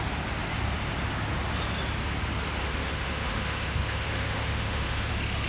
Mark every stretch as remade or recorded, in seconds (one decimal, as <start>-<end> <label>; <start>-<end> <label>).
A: 0.0-2.6 recorded; 2.6-5.1 remade; 5.1-5.5 recorded